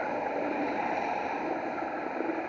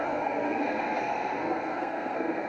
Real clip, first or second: first